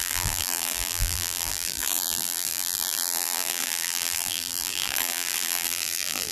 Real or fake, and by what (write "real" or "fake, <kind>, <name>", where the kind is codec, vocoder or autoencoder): fake, vocoder, BigVGAN v2